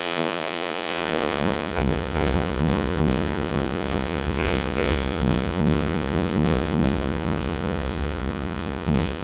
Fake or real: fake